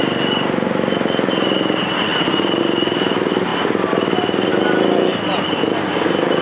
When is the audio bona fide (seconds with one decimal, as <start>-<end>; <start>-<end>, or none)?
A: 0.0-6.4